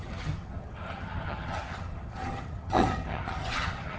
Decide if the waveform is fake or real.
fake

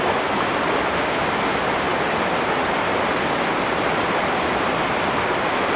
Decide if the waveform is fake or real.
real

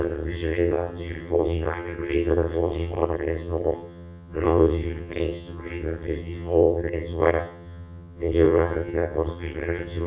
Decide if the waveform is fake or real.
fake